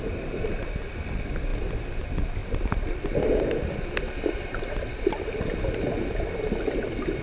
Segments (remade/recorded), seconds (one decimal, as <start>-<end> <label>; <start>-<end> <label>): 0.0-7.2 recorded